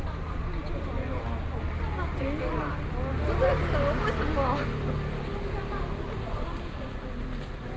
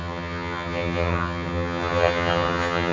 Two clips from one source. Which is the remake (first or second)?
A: second